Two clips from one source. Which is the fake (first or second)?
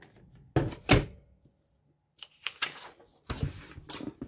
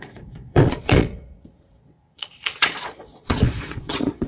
second